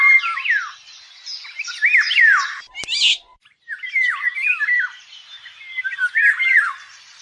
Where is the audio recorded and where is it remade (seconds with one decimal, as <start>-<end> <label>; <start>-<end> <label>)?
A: 0.0-3.3 recorded; 3.3-6.7 remade; 6.7-7.2 recorded